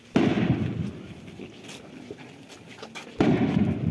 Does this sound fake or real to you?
real